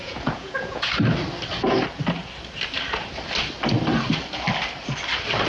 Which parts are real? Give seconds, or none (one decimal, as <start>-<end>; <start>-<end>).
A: 0.9-5.5